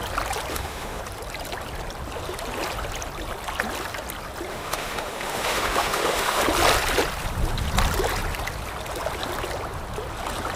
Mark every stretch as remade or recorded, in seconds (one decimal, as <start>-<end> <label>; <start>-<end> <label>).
0.0-0.5 recorded; 0.5-1.0 remade; 1.0-4.5 recorded; 4.5-6.4 remade; 6.4-10.6 recorded